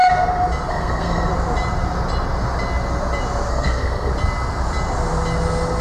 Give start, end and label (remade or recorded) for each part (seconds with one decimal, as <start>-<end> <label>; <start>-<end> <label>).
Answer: 0.0-0.7 recorded; 0.7-1.3 remade; 1.3-3.5 recorded; 3.5-4.1 remade; 4.1-5.8 recorded